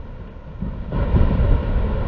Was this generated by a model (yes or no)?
no